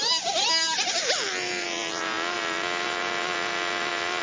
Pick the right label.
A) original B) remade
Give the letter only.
A